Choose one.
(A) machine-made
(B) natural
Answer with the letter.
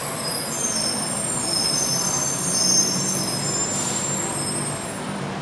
B